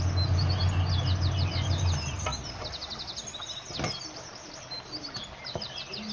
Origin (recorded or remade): recorded